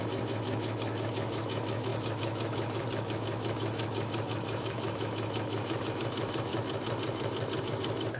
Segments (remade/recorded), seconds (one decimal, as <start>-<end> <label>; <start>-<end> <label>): 0.0-6.5 remade; 6.5-7.6 recorded; 7.6-8.2 remade